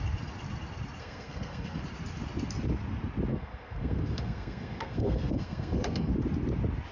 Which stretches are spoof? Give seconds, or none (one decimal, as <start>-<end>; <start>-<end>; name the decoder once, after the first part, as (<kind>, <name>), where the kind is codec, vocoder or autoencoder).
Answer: 1.0-1.8 (codec, SNAC); 3.3-6.1